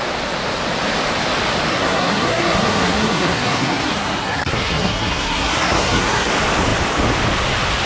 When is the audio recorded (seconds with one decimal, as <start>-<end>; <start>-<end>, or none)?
0.0-1.7; 6.3-7.9